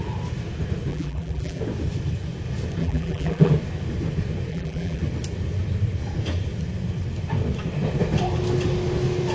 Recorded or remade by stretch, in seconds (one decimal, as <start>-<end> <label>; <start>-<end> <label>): 0.0-0.9 recorded; 0.9-1.6 remade; 1.6-2.8 recorded; 2.8-3.5 remade; 3.5-4.5 recorded; 4.5-5.0 remade; 5.0-9.3 recorded